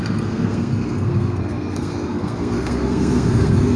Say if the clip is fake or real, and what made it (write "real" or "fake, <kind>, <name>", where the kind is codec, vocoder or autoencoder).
fake, codec, SNAC